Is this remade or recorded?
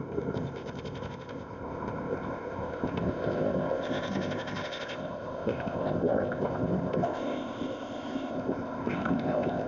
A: remade